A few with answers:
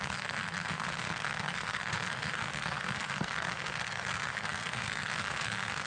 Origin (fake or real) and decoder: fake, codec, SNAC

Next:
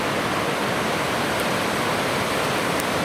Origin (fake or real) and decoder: real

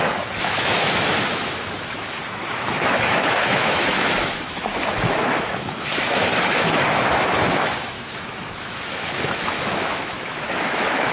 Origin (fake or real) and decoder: fake, autoencoder, DAC-VAE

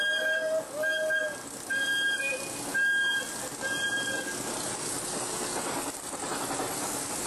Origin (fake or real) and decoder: real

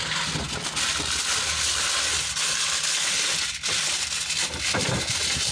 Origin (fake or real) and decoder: real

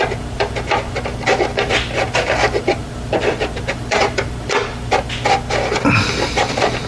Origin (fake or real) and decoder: fake, vocoder, BigVGAN v2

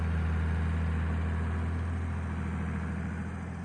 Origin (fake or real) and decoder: real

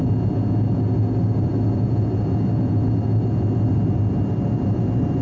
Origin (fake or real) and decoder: real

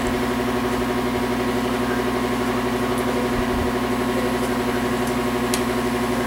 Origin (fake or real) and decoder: real